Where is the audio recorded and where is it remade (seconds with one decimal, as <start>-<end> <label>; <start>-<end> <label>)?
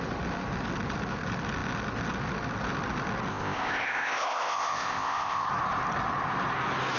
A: 0.0-3.3 recorded; 3.3-5.5 remade; 5.5-7.0 recorded